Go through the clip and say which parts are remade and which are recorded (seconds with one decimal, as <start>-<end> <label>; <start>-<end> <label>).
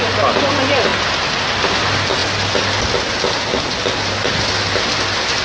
0.0-5.4 recorded